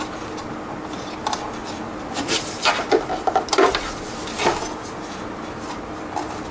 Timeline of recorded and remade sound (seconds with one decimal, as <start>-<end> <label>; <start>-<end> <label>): 0.0-1.6 recorded; 1.6-4.1 remade; 4.1-6.5 recorded